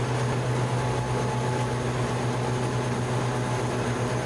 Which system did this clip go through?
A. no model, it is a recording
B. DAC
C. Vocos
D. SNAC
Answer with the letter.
A